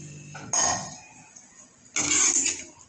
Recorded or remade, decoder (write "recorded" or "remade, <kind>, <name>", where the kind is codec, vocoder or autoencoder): recorded